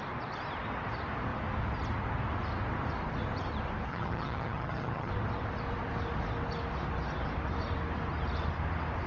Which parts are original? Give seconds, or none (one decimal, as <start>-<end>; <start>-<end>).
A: 0.0-3.9; 5.1-9.1